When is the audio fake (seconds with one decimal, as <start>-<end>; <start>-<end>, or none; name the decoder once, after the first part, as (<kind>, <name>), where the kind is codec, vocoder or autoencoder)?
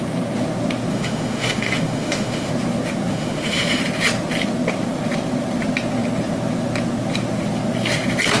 0.9-2.5 (autoencoder, DAC-VAE); 3.1-3.8